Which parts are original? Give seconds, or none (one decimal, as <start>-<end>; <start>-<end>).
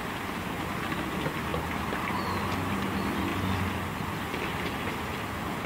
0.0-5.7